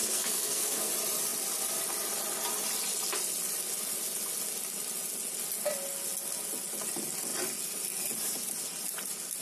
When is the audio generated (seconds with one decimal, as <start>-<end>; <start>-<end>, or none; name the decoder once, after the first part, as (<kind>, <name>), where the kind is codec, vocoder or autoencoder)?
0.0-0.9 (codec, SNAC)

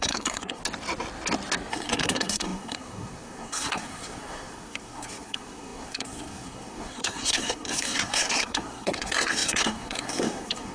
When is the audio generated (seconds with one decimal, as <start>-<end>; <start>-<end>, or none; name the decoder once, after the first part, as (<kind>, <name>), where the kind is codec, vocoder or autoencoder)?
0.0-0.6 (codec, SNAC); 1.7-10.7

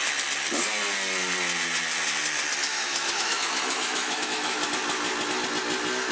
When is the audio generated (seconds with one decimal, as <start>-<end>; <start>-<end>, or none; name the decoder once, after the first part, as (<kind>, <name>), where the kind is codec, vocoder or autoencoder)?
2.7-4.7 (autoencoder, DAC-VAE)

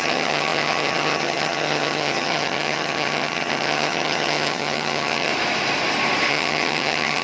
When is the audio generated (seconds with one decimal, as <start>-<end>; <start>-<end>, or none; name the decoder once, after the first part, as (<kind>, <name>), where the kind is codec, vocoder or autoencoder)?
0.0-5.3 (vocoder, HiFi-GAN); 6.3-7.2

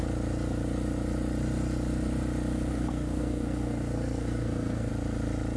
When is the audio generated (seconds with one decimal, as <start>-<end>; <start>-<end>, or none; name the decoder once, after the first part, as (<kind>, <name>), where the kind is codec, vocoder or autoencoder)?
2.7-4.9 (codec, SNAC)

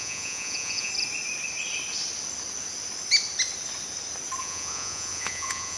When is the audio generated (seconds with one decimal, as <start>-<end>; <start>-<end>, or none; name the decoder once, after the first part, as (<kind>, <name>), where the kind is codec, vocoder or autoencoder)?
0.0-0.9 (vocoder, Vocos); 4.4-5.8